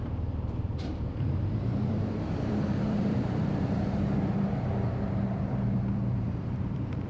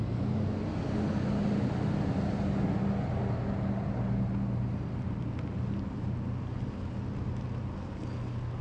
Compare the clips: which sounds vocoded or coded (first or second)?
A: first